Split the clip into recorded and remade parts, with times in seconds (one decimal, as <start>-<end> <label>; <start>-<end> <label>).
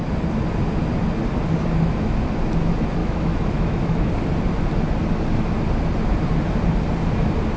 0.0-3.0 recorded; 3.0-4.1 remade; 4.1-7.6 recorded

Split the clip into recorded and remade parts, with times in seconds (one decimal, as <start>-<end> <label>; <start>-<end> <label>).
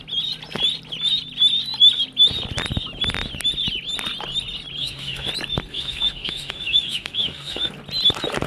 0.0-4.8 recorded; 4.8-5.3 remade; 5.3-5.7 recorded; 5.7-7.7 remade; 7.7-8.5 recorded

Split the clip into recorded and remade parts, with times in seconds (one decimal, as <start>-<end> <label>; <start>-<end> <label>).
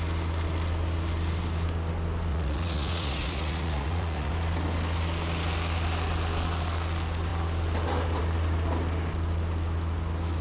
0.0-2.3 recorded; 2.3-4.3 remade; 4.3-10.4 recorded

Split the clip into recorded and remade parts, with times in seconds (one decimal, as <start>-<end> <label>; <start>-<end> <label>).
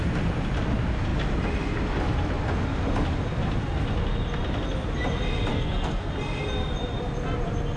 0.0-5.5 recorded; 5.5-6.1 remade; 6.1-7.8 recorded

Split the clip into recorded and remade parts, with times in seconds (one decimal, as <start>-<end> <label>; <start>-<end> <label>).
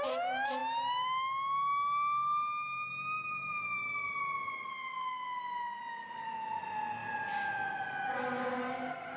0.0-9.2 recorded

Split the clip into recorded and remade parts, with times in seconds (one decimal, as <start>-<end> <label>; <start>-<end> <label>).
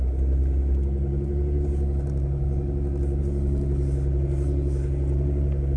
0.0-5.8 recorded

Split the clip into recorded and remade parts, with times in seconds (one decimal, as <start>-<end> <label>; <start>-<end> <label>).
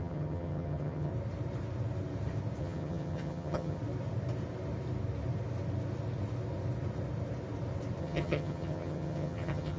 0.0-1.1 remade; 1.1-2.6 recorded; 2.6-3.8 remade; 3.8-8.0 recorded; 8.0-9.8 remade